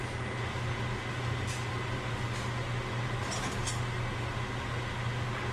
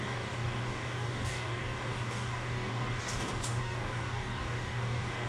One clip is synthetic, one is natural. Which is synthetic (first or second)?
second